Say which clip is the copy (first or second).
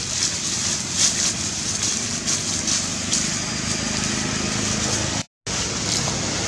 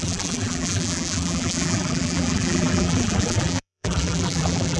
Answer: second